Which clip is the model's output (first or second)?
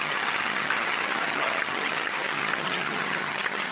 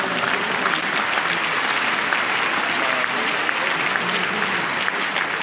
first